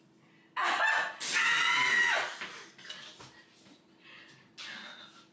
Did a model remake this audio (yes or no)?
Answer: no